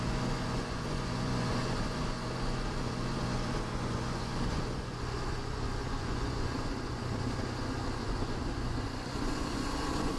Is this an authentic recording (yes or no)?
no